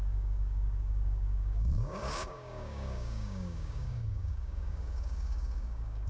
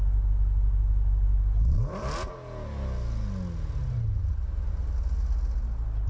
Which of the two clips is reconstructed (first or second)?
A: first